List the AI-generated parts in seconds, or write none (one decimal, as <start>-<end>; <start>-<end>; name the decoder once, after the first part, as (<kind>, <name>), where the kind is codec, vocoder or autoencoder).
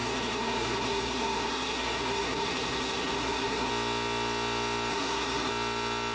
0.0-3.7 (codec, SNAC); 4.9-5.5